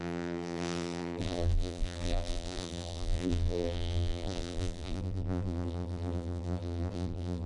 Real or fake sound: fake